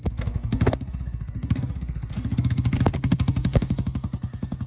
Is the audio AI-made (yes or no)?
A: yes